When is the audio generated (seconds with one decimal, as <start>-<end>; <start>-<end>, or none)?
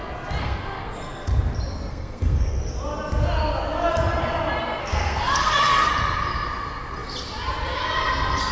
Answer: 0.4-1.0; 1.9-2.6; 4.8-5.9